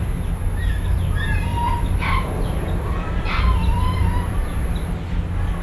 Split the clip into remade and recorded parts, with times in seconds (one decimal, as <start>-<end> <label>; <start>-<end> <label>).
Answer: 0.0-1.5 recorded; 1.5-4.9 remade; 4.9-5.6 recorded